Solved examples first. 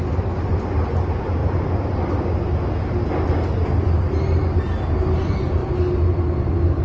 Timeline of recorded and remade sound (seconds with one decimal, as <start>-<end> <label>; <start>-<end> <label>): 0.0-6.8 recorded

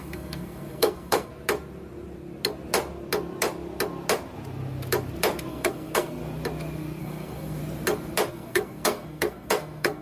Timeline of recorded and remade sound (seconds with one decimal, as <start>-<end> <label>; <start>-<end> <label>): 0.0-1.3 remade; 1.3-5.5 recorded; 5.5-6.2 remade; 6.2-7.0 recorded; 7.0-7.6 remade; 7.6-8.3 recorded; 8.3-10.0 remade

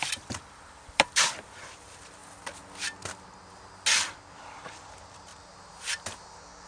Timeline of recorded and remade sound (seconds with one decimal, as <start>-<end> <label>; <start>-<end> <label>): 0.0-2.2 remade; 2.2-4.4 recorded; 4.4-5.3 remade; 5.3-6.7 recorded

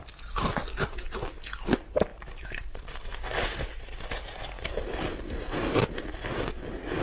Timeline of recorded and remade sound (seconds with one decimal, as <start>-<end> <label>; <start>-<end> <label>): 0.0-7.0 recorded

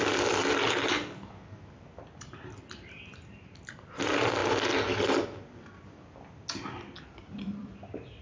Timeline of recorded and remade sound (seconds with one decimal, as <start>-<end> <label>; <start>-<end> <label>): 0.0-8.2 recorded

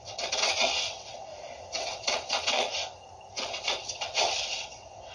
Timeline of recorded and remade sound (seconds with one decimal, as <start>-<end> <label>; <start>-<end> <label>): 0.0-1.3 remade; 1.3-1.8 recorded; 1.8-2.7 remade; 2.7-3.3 recorded; 3.3-5.1 remade